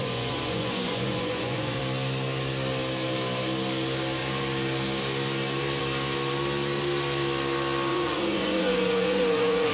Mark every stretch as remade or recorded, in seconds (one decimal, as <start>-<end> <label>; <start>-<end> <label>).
0.0-1.8 remade; 1.8-7.9 recorded; 7.9-9.7 remade